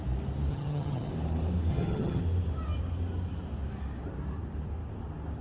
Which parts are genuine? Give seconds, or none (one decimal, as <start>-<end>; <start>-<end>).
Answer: 0.0-0.5; 1.1-1.7; 2.2-5.4